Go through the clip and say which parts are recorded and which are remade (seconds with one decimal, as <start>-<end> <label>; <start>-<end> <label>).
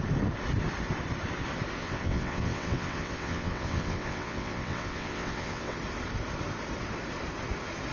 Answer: 0.0-1.8 recorded; 1.8-5.8 remade; 5.8-7.9 recorded